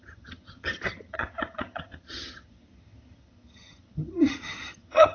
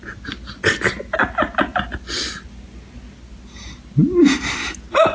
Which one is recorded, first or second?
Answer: second